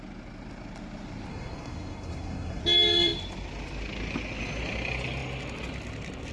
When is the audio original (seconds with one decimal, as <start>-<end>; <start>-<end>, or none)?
0.0-1.3; 2.6-6.3

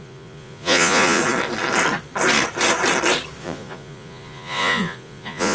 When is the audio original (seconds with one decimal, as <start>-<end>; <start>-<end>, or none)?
1.2-3.4

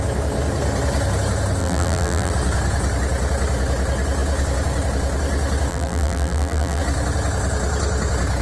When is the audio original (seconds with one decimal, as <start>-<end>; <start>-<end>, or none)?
0.0-1.6; 2.3-5.7; 6.8-8.4

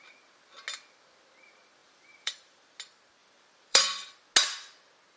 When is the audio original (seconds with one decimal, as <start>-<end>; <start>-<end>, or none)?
0.0-1.8; 2.8-3.2; 3.8-5.2

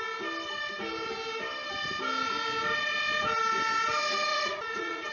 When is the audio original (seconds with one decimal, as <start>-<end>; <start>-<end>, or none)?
0.0-4.3

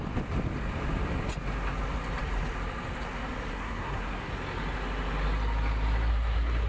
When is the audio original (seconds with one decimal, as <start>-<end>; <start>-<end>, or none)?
0.0-3.5; 4.3-6.1

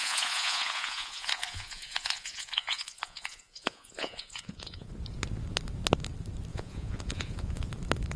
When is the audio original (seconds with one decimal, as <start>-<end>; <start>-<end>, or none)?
4.9-6.5; 7.7-8.2